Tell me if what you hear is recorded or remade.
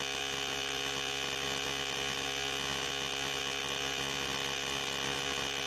recorded